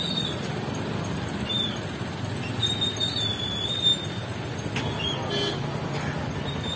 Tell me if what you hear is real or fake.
real